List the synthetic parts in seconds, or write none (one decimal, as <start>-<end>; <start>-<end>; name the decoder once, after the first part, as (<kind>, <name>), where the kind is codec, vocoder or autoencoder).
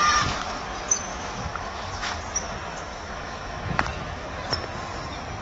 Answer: 1.1-2.2 (autoencoder, DAC-VAE); 2.9-4.3